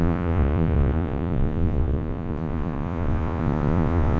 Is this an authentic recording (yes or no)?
no